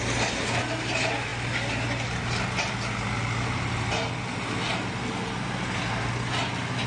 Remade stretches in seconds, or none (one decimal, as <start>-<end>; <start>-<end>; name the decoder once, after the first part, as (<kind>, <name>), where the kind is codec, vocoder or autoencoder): none